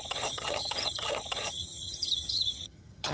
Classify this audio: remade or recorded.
remade